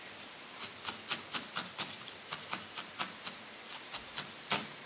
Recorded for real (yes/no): yes